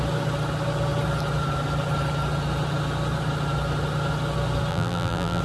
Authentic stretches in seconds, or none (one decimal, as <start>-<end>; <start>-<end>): 0.0-4.7

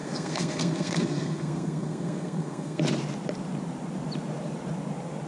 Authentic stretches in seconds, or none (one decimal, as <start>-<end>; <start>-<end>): 2.8-5.3

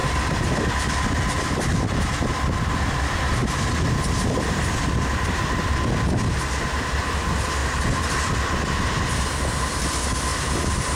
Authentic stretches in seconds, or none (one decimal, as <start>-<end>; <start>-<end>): 2.8-3.4; 5.8-7.6; 8.1-10.3